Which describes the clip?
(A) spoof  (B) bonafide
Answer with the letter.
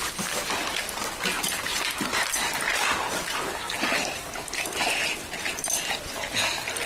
B